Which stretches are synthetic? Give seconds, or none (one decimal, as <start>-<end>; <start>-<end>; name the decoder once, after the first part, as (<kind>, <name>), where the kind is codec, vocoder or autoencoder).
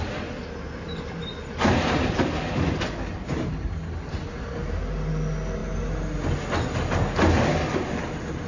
none